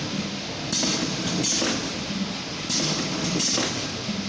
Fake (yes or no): no